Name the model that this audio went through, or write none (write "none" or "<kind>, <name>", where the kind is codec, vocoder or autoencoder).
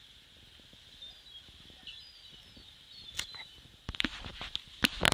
none